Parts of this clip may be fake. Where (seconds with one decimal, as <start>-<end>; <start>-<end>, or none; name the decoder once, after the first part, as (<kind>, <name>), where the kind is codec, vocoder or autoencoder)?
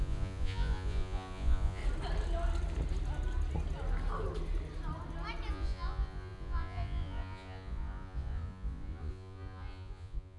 0.0-1.8 (vocoder, Vocos); 5.5-10.4